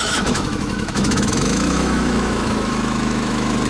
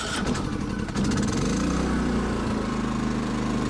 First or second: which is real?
second